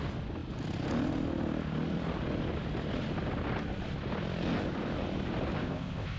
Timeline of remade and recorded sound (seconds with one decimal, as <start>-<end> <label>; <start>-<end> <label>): 0.0-5.6 recorded; 5.6-6.2 remade